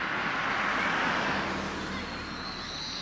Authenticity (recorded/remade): recorded